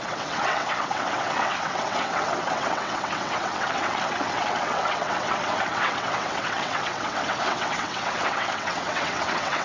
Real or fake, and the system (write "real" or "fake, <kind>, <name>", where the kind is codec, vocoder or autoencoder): fake, vocoder, WaveNeXt